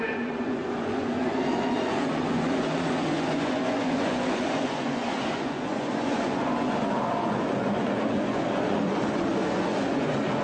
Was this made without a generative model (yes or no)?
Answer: no